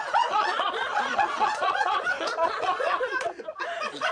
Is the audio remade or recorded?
remade